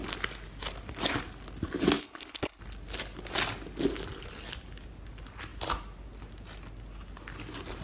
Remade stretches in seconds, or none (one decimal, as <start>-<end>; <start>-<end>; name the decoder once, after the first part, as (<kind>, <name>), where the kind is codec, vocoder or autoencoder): 2.0-2.6 (codec, HILCodec)